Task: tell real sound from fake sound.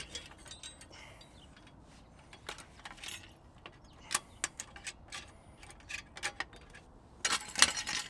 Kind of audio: real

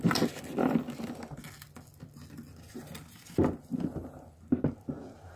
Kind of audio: real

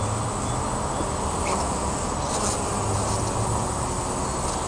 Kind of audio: real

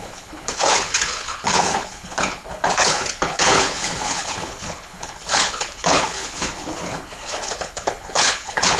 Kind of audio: fake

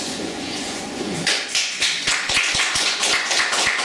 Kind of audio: fake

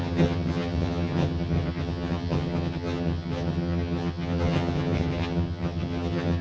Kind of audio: fake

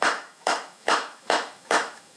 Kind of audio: fake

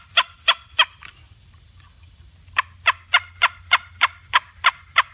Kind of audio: real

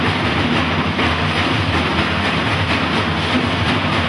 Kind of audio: real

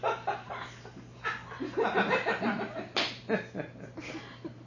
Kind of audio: real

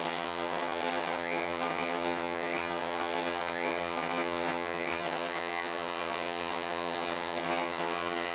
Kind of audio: fake